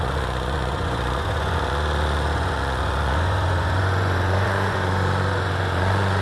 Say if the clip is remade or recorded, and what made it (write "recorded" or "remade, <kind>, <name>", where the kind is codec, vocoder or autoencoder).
remade, vocoder, Vocos